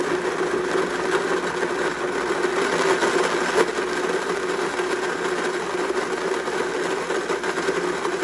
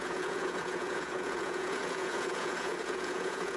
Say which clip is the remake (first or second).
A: second